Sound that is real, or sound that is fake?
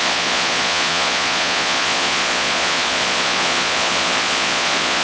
fake